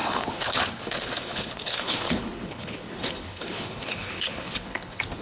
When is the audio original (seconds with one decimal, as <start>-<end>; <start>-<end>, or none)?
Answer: none